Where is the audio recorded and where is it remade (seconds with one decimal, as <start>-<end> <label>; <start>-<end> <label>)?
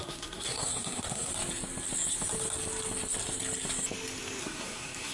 0.0-1.3 remade; 1.3-4.4 recorded; 4.4-5.1 remade